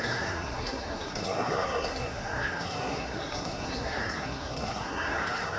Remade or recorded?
remade